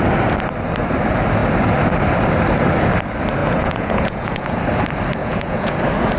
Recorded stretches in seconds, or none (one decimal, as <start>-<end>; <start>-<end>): 0.0-3.4; 4.6-5.2; 5.8-6.2